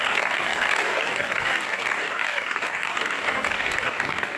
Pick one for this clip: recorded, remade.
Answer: remade